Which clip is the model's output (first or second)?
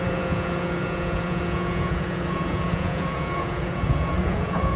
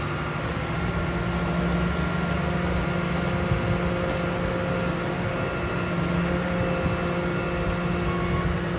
first